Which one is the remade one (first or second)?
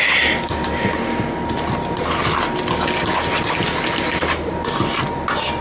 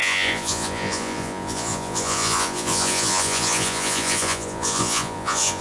second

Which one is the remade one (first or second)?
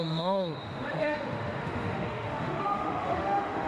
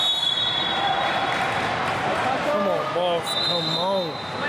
first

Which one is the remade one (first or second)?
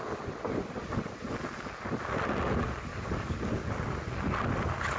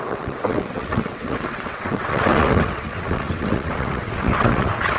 second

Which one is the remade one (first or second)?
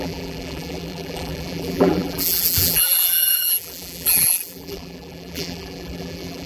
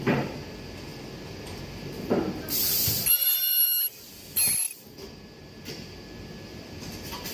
first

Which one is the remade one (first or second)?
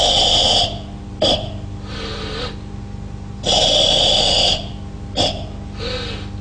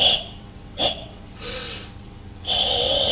second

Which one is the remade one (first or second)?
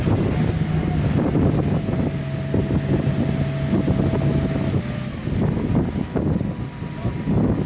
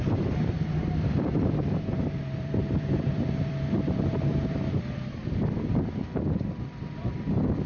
second